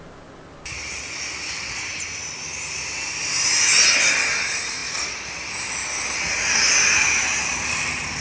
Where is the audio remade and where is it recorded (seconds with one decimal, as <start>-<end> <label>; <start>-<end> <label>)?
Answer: 0.0-8.2 recorded